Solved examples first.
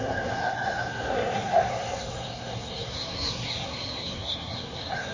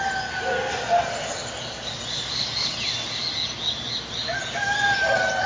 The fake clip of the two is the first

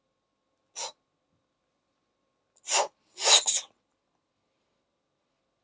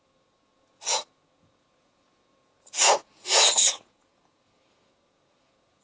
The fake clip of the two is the second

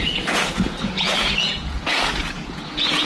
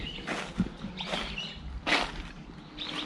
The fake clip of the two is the first